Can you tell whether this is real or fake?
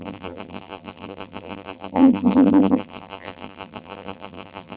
fake